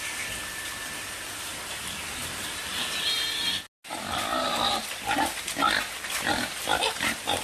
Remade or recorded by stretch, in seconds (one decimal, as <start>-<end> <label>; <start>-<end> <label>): 0.0-7.4 recorded